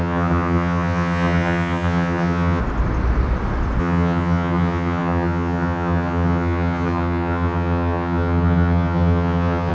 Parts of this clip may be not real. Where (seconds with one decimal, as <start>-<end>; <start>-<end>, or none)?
0.0-2.6; 3.8-9.7